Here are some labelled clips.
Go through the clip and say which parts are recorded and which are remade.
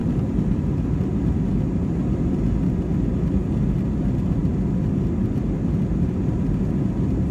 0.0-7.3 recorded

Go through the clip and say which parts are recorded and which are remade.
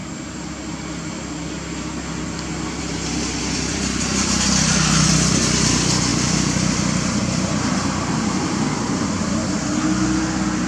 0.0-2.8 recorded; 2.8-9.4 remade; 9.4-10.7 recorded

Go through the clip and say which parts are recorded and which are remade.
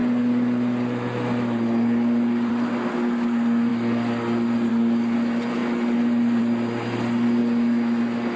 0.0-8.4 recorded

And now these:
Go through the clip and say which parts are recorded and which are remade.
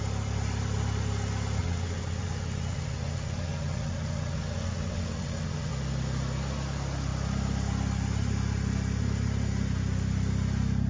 0.0-1.6 recorded; 1.6-5.7 remade; 5.7-10.9 recorded